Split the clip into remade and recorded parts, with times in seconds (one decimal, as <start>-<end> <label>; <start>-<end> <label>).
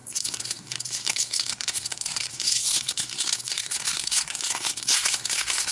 0.0-5.7 remade